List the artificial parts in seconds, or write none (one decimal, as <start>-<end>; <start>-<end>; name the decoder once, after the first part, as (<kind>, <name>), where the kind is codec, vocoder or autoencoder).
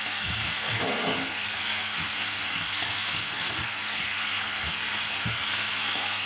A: 0.0-6.3 (codec, SNAC)